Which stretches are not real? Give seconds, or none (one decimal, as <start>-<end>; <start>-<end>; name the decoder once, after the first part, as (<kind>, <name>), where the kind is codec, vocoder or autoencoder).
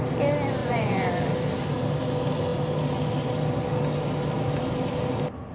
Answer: 0.6-1.1 (vocoder, Vocos)